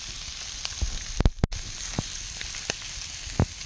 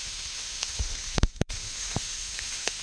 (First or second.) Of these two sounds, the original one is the first